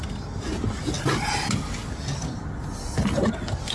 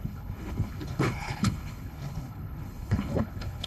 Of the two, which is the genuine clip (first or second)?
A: first